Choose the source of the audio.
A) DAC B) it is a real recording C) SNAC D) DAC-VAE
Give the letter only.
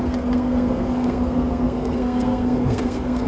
C